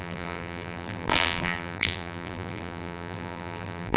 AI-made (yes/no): yes